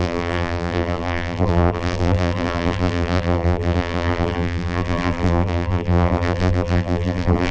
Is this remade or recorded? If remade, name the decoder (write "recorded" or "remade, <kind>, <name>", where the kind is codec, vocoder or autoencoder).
remade, vocoder, BigVGAN v2